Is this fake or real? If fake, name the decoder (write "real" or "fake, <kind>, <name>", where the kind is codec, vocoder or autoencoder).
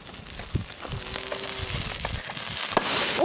real